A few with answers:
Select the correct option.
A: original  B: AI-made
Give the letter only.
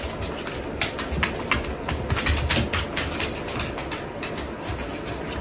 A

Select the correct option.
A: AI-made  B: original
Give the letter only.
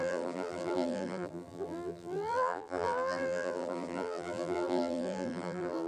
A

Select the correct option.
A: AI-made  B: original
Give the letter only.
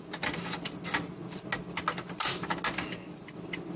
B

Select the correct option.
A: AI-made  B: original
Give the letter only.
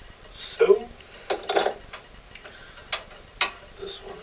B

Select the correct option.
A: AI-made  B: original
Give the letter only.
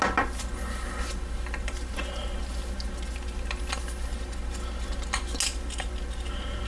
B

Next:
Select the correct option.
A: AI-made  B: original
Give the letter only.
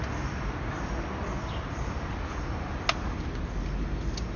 B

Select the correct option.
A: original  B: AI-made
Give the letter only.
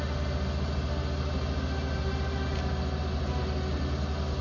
A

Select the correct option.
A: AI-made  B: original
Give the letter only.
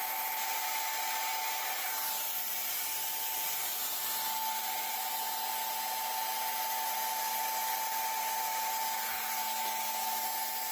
B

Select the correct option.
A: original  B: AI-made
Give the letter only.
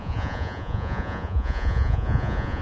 B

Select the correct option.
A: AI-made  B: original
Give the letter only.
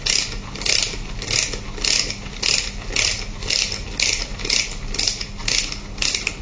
B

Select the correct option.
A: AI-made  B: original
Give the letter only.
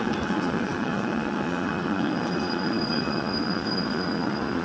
A